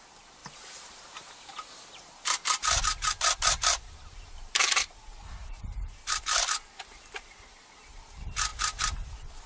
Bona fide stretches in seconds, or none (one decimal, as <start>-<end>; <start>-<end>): 0.0-0.4; 4.8-5.4; 6.2-9.5